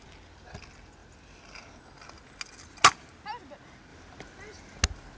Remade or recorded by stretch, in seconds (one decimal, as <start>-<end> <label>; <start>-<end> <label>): 0.0-5.2 recorded